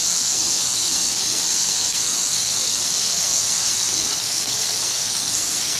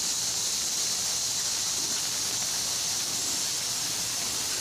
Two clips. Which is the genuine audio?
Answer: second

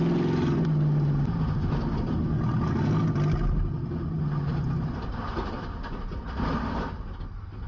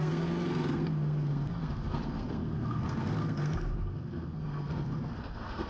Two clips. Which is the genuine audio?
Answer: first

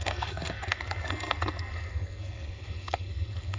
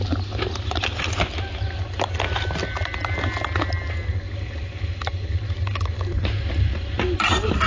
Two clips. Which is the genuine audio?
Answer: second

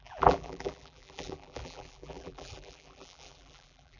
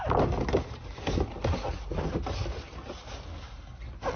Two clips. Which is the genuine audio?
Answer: second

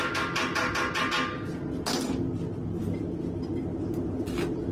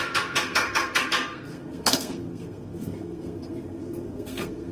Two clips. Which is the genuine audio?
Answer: first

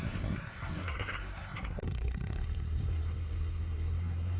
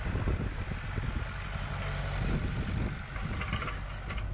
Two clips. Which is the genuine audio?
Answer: second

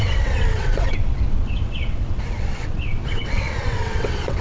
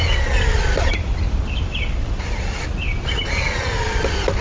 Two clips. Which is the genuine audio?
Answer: second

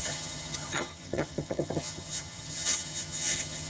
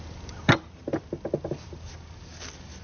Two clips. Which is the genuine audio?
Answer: second